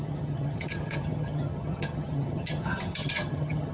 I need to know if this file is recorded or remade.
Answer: remade